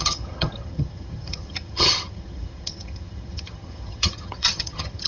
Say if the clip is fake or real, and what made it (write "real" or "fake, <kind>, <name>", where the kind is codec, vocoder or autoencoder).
fake, vocoder, HiFi-GAN